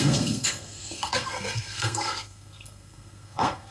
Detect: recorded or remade remade